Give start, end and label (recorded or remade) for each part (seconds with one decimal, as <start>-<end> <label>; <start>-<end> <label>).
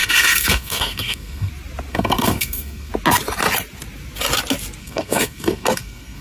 0.0-1.5 remade; 1.5-1.9 recorded; 1.9-2.9 remade; 2.9-4.8 recorded; 4.8-6.2 remade